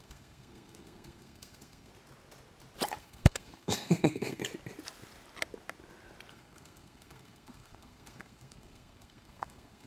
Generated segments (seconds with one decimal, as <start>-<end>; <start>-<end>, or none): 0.0-1.9; 3.0-4.4; 6.3-9.9